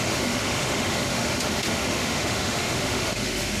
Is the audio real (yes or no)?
no